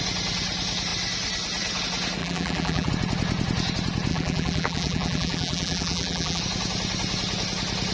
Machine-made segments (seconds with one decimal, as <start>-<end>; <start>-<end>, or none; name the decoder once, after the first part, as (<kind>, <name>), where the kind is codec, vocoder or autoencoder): 2.2-2.9 (vocoder, BigVGAN v2); 4.1-6.4